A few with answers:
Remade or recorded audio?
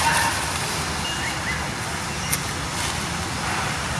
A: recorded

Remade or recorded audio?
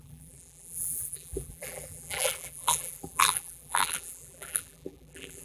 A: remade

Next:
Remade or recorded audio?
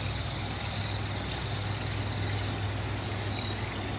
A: recorded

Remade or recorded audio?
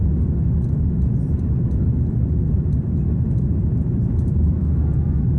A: recorded